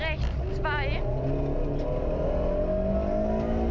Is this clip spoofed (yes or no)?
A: no